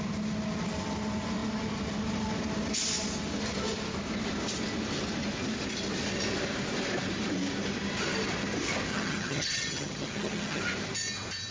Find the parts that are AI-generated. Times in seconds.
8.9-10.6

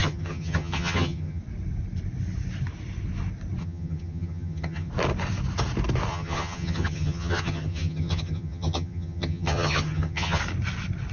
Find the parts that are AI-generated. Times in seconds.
0.0-1.4; 3.6-4.9; 6.1-10.4

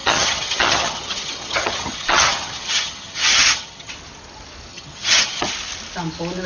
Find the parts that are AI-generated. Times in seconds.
0.0-3.9; 4.7-5.5

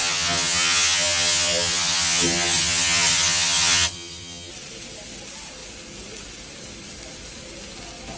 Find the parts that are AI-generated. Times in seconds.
0.0-4.5

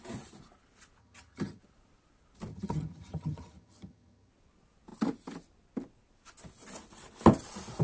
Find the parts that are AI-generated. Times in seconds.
1.0-1.6; 2.5-4.3

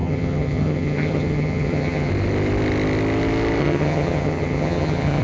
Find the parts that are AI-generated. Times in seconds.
0.0-2.1; 3.6-5.2

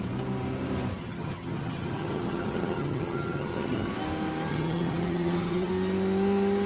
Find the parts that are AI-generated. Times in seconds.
1.0-3.9; 4.5-5.7

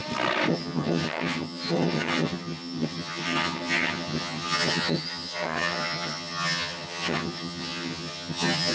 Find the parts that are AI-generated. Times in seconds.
0.5-8.7